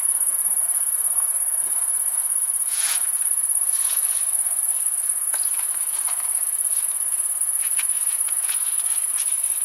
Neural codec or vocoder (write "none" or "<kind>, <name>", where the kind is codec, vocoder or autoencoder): vocoder, Vocos